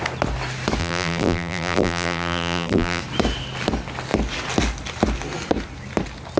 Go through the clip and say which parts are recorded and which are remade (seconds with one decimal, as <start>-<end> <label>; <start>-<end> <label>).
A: 0.0-0.8 recorded; 0.8-3.0 remade; 3.0-6.4 recorded